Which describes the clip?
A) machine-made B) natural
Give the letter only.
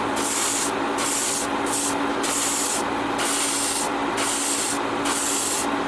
B